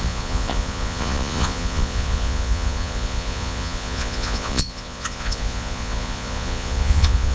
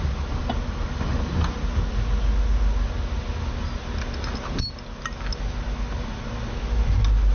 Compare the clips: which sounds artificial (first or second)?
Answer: first